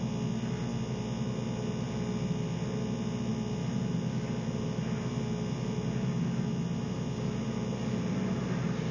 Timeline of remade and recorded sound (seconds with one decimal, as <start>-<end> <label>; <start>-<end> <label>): 0.0-8.9 recorded